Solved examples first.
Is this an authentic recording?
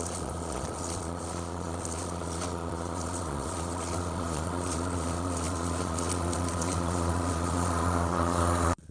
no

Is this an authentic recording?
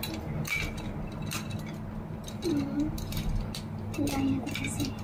yes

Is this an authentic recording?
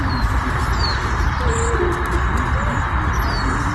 yes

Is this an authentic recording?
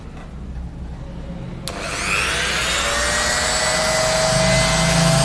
yes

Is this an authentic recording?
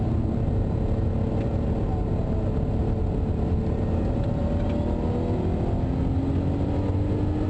yes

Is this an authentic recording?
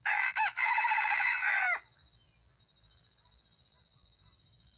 no